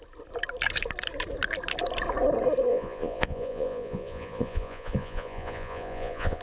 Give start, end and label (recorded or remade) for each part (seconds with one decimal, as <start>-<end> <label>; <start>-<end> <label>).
0.0-2.7 recorded; 2.7-6.4 remade